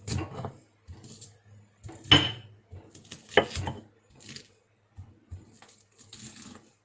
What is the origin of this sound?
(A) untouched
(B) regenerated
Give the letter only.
A